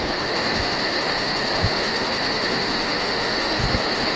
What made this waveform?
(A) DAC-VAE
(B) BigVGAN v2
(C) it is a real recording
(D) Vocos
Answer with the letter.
A